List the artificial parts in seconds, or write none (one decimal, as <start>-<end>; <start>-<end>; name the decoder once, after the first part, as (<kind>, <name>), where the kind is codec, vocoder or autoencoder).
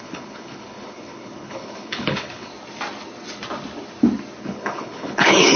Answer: 0.0-2.5 (codec, HILCodec); 4.4-5.6